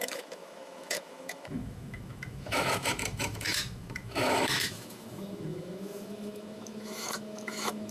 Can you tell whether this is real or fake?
fake